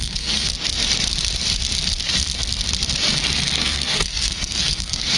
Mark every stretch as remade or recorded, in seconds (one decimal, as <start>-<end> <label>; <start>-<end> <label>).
0.0-0.5 remade; 0.5-3.6 recorded; 3.6-5.2 remade